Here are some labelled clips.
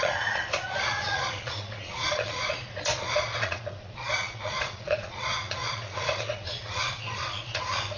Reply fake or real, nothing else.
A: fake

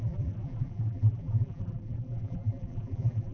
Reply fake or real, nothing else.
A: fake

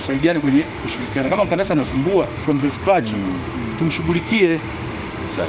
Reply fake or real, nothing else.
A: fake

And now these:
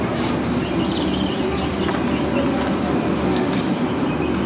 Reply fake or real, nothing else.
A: real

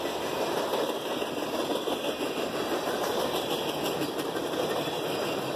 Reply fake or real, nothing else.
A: real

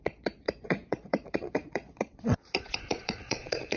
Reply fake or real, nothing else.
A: fake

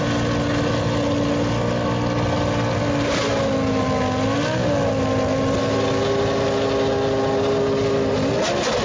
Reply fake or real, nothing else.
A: real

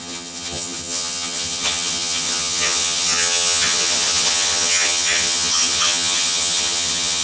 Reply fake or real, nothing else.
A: fake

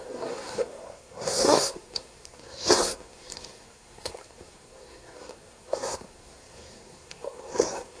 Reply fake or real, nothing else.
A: fake